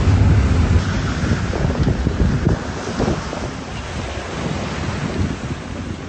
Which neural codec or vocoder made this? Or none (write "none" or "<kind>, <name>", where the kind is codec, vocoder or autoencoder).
none